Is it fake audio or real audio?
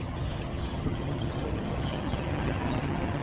fake